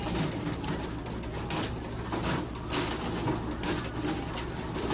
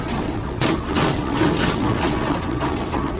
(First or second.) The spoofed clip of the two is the second